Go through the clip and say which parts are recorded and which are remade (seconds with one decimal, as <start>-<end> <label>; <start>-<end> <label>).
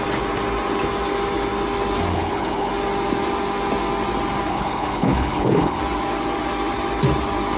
0.0-2.1 recorded; 2.1-2.7 remade; 2.7-4.5 recorded; 4.5-5.8 remade; 5.8-7.6 recorded